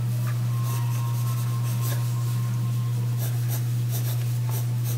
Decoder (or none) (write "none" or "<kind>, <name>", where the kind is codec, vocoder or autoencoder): vocoder, BigVGAN v2